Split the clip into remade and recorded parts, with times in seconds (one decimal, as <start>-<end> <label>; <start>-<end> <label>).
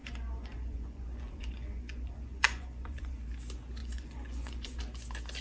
0.0-3.2 remade; 3.2-3.8 recorded; 3.8-4.8 remade; 4.8-5.4 recorded